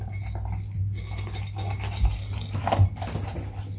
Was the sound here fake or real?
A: real